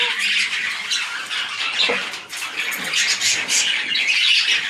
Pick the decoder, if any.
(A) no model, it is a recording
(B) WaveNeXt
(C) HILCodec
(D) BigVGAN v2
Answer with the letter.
A